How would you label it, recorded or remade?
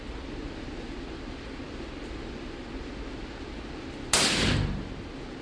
recorded